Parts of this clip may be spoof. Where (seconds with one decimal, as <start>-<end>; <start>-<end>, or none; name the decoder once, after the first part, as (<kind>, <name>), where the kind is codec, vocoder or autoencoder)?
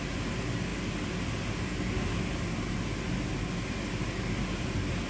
none